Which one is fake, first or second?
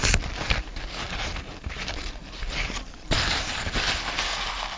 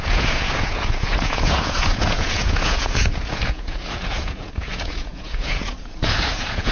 second